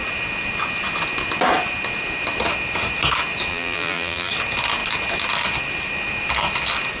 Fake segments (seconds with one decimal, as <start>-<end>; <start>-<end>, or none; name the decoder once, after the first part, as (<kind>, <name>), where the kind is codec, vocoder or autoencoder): 3.5-4.3 (vocoder, BigVGAN v2)